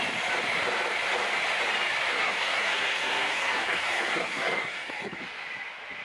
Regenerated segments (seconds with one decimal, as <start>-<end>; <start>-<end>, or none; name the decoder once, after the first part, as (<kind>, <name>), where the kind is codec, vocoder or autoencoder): 2.1-5.2 (codec, SNAC)